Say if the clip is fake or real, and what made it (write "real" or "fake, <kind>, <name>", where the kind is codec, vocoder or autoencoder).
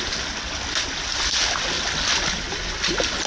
real